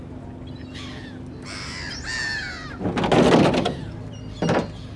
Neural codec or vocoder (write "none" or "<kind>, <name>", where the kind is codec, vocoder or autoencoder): none